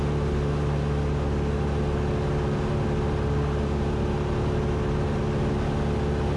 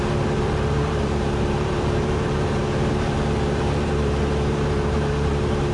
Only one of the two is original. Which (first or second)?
first